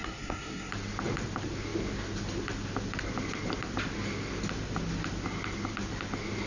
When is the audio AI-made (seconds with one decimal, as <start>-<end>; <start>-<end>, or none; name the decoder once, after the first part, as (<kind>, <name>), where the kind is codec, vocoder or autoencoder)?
0.0-0.7 (codec, SNAC)

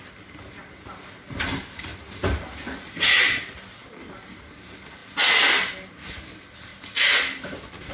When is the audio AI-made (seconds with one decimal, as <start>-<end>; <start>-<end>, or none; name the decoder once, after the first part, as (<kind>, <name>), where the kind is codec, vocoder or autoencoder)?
none